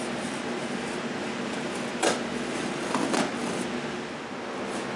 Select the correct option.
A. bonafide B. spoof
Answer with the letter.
A